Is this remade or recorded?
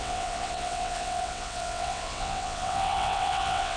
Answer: remade